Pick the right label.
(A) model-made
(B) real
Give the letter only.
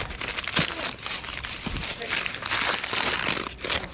B